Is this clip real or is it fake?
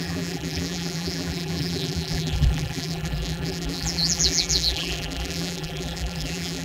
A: fake